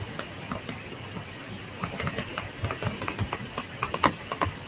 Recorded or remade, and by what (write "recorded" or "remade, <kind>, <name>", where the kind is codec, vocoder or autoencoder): recorded